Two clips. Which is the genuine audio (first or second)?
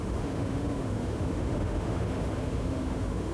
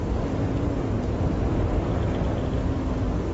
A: second